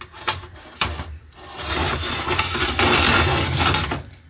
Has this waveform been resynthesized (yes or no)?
no